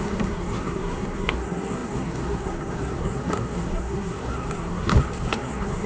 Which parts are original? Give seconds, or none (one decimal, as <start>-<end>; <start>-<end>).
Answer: none